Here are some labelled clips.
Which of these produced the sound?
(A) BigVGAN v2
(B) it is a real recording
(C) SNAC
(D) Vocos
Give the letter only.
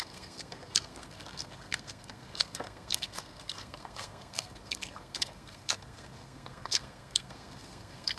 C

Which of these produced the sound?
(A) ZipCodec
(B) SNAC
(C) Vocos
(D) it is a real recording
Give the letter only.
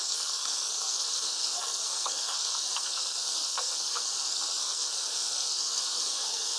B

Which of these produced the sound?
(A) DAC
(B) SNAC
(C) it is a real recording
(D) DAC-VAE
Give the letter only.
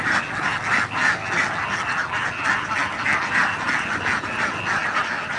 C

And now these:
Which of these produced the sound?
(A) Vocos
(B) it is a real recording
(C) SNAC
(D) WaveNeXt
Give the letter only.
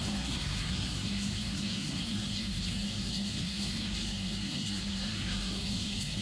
C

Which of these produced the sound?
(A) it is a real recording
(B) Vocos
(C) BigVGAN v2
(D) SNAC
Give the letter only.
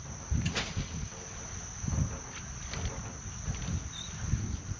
A